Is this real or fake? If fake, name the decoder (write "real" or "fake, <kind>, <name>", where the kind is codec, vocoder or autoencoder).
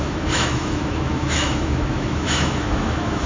fake, autoencoder, DAC-VAE